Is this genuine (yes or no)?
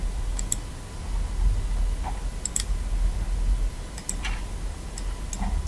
yes